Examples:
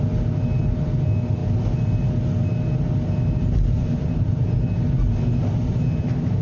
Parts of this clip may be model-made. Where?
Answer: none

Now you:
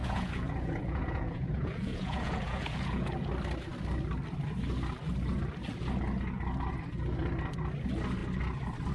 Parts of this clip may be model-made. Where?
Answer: 0.0-3.3

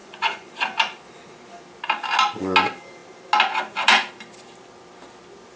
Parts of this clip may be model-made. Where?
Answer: 0.0-0.5

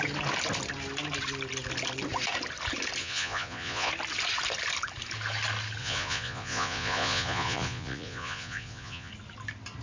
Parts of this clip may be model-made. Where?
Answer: 3.0-3.9; 5.8-9.1

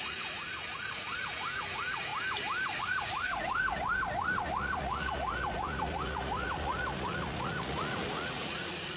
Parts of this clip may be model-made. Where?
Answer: 0.0-2.1; 2.8-9.0

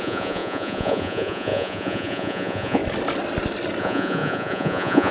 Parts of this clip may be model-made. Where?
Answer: 0.0-2.8; 3.8-5.1

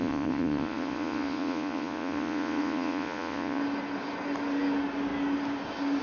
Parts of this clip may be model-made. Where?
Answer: 0.0-3.6